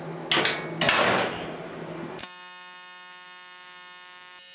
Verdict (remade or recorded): recorded